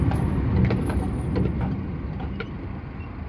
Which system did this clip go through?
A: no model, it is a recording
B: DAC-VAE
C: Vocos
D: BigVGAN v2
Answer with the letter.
A